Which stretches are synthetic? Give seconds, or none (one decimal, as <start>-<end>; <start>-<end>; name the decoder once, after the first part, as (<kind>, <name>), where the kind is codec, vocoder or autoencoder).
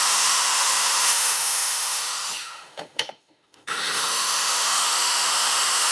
0.0-5.9 (autoencoder, DAC-VAE)